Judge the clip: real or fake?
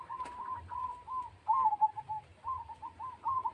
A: fake